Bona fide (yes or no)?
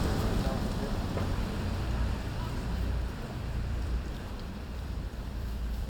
no